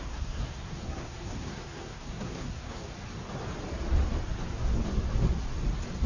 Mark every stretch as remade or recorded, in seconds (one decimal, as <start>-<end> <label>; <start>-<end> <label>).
0.0-2.9 remade; 2.9-6.1 recorded